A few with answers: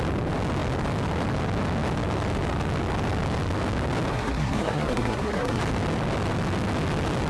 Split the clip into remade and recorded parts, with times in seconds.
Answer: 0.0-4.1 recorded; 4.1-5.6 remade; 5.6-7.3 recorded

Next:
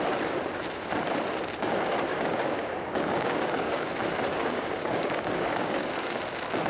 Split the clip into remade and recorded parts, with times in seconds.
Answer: 0.0-2.1 recorded; 2.1-3.9 remade; 3.9-4.3 recorded; 4.3-6.2 remade; 6.2-6.7 recorded

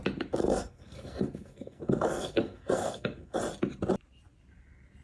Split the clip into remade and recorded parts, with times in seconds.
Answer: 0.0-0.4 recorded; 0.4-3.4 remade; 3.4-5.0 recorded

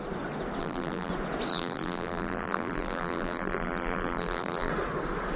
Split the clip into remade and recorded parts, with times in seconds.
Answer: 0.0-0.6 recorded; 0.6-1.1 remade; 1.1-1.5 recorded; 1.5-4.7 remade; 4.7-5.4 recorded